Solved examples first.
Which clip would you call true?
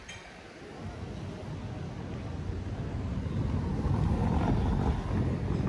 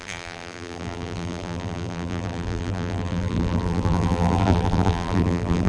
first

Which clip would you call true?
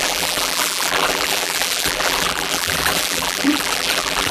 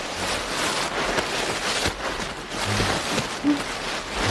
second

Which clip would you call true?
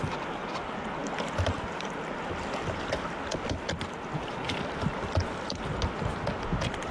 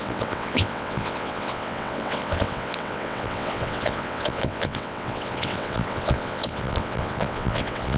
first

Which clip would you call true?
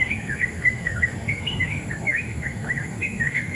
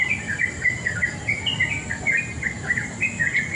second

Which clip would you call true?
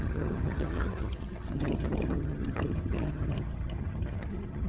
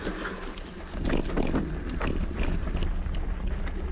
second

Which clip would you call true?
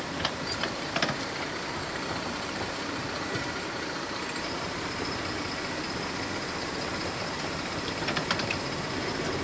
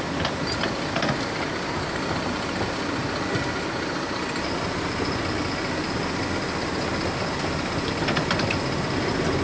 second